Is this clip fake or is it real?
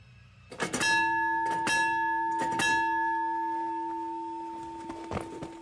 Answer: real